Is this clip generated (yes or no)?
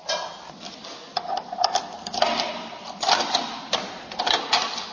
no